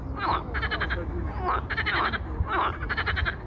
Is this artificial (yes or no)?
no